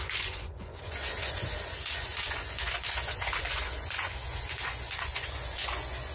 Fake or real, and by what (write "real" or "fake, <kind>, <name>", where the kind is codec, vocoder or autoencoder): fake, vocoder, Vocos